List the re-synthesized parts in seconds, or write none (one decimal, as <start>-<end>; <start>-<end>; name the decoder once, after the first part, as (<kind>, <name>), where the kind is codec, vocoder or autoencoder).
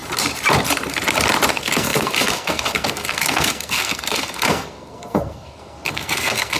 1.5-6.6 (codec, SNAC)